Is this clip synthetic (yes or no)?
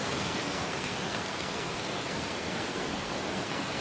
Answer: yes